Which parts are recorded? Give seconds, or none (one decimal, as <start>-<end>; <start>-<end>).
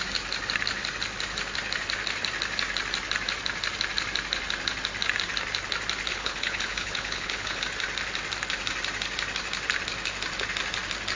0.0-6.1; 7.6-11.2